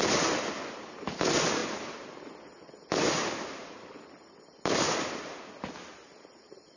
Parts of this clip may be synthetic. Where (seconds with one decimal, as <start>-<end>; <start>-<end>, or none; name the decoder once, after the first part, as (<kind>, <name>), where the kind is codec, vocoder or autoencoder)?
none